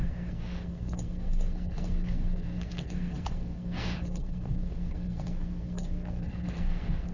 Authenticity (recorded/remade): remade